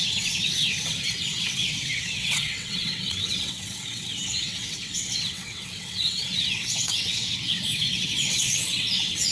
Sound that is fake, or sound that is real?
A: fake